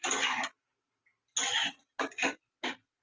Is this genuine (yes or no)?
yes